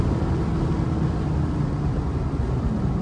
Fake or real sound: real